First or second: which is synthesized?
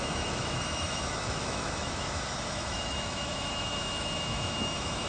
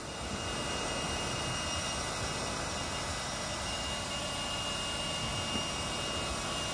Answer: first